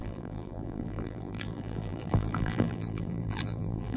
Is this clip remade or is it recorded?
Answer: remade